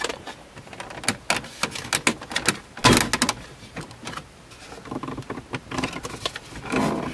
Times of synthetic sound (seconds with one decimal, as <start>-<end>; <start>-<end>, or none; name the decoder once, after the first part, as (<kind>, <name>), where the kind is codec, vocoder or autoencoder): none